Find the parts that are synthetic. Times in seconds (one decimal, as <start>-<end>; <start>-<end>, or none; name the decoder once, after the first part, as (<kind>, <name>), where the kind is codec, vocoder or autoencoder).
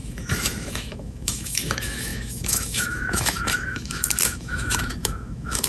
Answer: 0.0-5.7 (autoencoder, DAC-VAE)